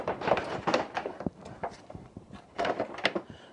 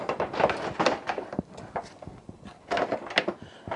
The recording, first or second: second